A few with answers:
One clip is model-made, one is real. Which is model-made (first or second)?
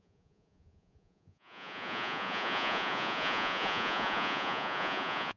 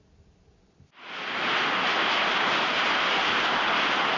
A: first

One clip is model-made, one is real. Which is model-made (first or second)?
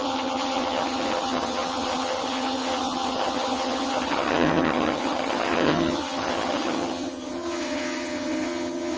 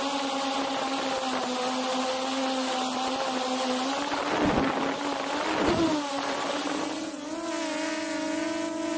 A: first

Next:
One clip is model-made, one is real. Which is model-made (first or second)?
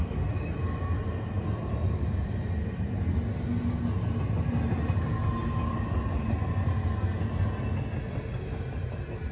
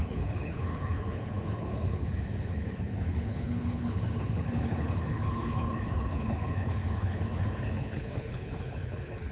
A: second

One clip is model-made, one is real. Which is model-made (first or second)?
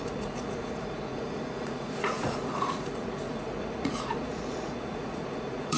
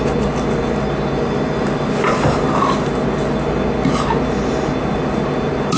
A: first